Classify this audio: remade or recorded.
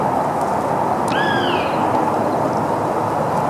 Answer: recorded